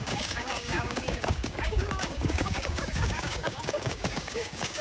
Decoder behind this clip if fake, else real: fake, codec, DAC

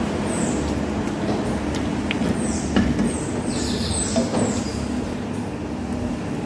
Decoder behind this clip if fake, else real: real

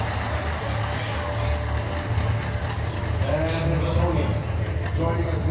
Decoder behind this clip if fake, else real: real